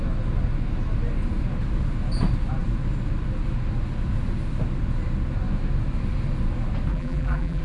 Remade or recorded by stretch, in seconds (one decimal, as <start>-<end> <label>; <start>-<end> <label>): 0.0-6.9 recorded; 6.9-7.6 remade